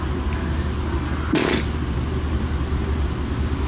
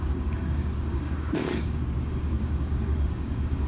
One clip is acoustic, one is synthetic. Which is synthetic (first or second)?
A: second